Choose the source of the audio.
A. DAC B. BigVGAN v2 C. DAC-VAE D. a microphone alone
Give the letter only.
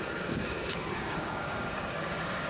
A